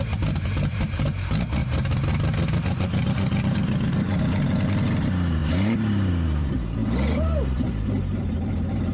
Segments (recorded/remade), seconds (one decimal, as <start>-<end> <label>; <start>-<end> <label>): 0.0-1.6 remade; 1.6-5.0 recorded; 5.0-8.9 remade